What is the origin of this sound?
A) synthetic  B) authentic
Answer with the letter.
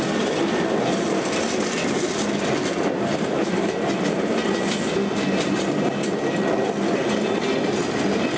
B